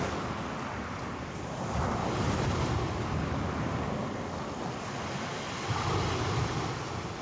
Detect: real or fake real